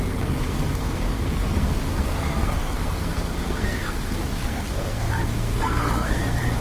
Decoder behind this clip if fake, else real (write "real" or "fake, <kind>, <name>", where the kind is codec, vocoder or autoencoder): fake, codec, SNAC